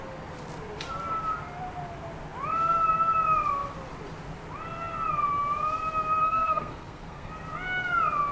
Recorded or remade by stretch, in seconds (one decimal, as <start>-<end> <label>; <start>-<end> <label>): 0.0-6.2 recorded; 6.2-7.3 remade; 7.3-8.3 recorded